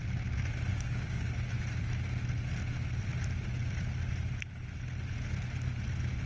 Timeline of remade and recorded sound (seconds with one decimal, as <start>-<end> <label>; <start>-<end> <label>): 0.0-0.7 recorded; 0.7-1.3 remade; 1.3-6.3 recorded